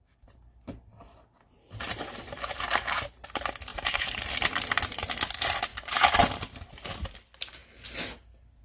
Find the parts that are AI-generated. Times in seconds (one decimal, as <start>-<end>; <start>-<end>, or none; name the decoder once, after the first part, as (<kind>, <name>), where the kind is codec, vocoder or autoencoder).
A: 1.9-3.2 (vocoder, BigVGAN v2); 3.7-4.3